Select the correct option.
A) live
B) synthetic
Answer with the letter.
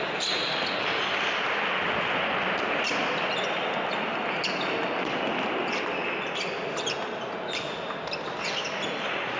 A